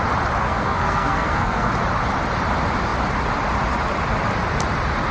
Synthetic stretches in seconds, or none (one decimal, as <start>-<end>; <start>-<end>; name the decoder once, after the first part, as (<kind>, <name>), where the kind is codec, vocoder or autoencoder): 0.4-1.7 (codec, SNAC)